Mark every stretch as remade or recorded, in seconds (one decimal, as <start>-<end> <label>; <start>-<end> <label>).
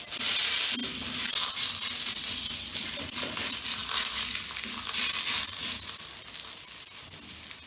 0.0-7.7 recorded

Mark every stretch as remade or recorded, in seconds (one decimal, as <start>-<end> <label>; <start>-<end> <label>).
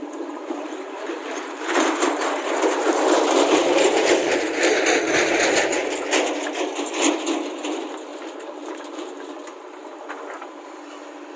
0.0-4.8 remade; 4.8-8.1 recorded; 8.1-9.2 remade; 9.2-11.4 recorded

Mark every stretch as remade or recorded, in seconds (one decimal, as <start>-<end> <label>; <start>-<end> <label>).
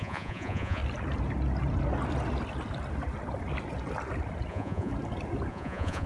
0.0-0.8 remade; 0.8-4.5 recorded; 4.5-4.9 remade; 4.9-5.5 recorded; 5.5-6.1 remade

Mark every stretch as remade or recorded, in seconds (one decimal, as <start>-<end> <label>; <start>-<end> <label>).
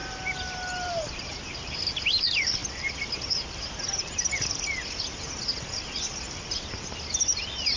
0.0-7.8 recorded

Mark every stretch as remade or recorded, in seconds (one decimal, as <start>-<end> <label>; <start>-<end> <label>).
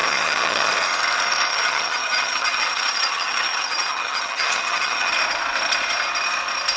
0.0-0.7 remade; 0.7-1.5 recorded; 1.5-5.1 remade; 5.1-6.8 recorded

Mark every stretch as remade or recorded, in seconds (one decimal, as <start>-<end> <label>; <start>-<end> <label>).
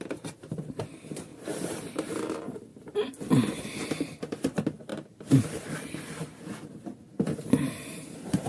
0.0-2.7 remade; 2.7-3.8 recorded; 3.8-8.5 remade